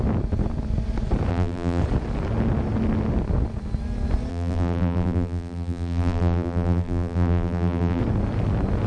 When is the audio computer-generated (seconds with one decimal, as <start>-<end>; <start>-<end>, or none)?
1.3-1.8; 4.3-8.0